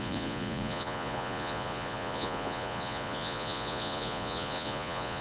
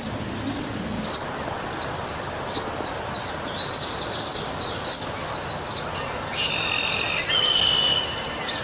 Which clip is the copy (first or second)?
first